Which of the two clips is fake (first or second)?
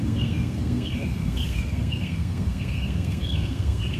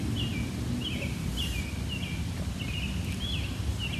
first